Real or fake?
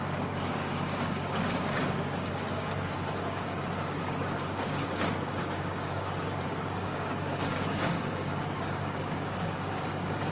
fake